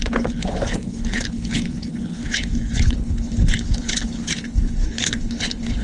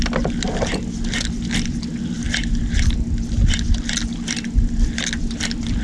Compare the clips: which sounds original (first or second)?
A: second